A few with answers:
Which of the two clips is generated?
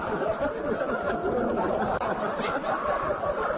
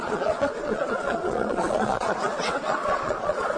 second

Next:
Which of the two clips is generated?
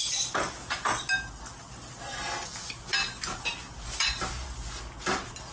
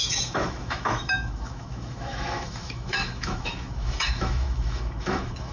second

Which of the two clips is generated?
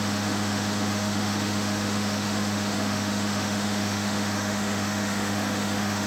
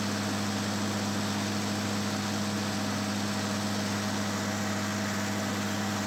first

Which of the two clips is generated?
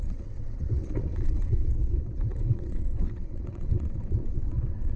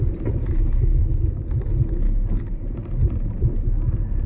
first